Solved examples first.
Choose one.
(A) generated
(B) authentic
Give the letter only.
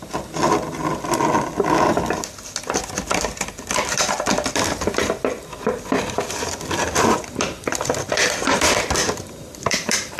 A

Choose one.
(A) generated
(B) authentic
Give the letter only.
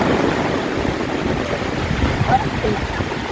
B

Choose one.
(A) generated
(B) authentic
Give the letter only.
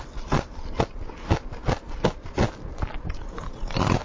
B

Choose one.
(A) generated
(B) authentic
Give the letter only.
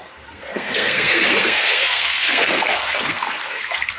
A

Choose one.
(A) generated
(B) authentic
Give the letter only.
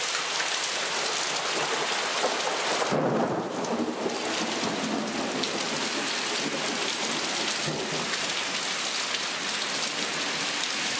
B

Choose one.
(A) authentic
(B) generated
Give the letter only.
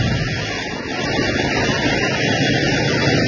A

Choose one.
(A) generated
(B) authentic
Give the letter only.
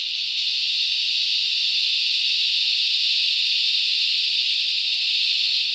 B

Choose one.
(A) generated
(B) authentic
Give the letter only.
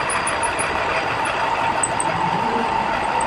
B